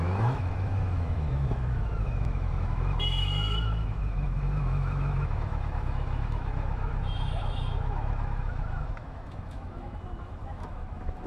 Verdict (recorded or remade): remade